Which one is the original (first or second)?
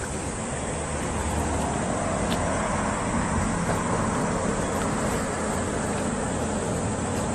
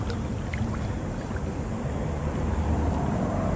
first